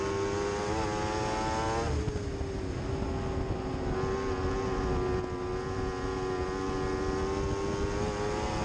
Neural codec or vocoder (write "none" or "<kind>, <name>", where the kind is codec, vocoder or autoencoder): none